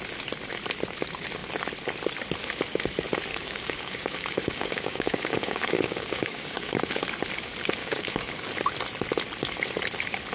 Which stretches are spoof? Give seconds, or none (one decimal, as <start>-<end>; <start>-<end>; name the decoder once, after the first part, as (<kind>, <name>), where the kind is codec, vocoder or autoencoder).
3.3-7.0 (codec, DAC); 7.8-8.5